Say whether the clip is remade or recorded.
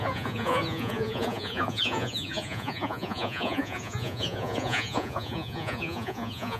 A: remade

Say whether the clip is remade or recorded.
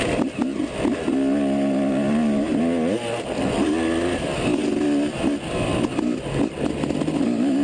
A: recorded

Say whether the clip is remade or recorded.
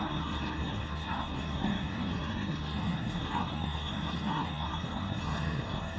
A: remade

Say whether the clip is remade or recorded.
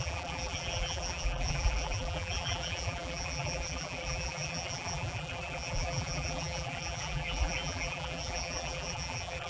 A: remade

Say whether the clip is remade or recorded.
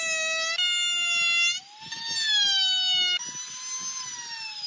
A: recorded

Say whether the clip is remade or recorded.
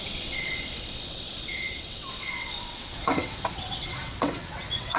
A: remade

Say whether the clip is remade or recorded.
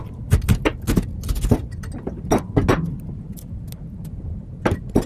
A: recorded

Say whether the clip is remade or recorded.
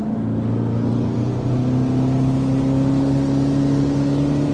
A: recorded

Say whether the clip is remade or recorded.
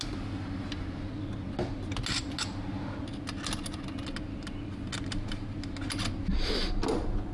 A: recorded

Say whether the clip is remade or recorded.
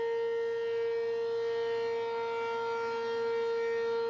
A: recorded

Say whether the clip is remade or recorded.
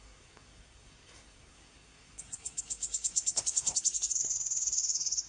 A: remade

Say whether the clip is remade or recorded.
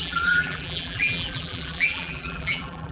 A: remade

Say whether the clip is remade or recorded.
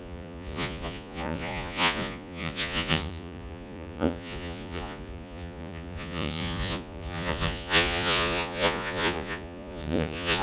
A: remade